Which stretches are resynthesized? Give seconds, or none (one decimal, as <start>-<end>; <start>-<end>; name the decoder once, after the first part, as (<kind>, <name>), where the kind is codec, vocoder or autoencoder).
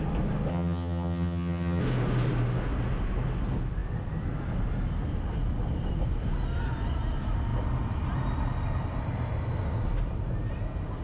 0.5-1.8 (vocoder, HiFi-GAN)